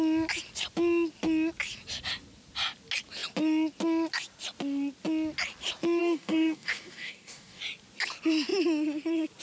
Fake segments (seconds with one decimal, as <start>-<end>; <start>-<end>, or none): 6.0-7.6